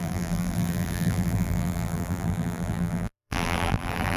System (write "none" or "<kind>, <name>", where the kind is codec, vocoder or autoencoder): vocoder, BigVGAN v2